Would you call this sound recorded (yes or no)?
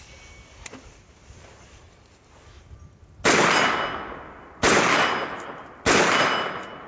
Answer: yes